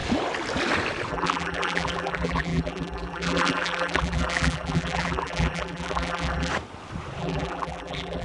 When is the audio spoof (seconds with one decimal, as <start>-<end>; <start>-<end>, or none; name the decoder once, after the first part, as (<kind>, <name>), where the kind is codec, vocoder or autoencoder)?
1.1-6.5 (vocoder, BigVGAN v2); 7.2-8.2